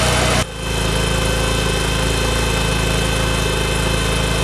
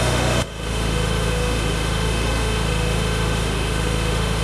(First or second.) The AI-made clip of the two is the second